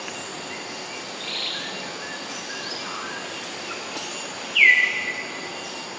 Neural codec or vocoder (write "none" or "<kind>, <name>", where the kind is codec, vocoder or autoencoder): none